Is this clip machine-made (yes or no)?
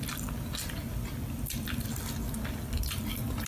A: no